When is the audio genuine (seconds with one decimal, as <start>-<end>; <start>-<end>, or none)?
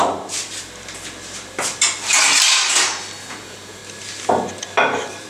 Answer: 0.0-3.2; 3.8-5.3